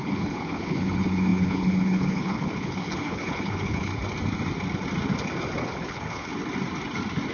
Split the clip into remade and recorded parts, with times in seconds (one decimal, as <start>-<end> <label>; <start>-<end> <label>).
0.0-3.9 remade; 3.9-5.6 recorded; 5.6-6.3 remade; 6.3-7.3 recorded